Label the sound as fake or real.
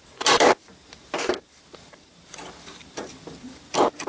fake